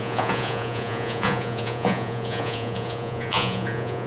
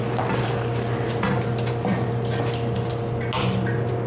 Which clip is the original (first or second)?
second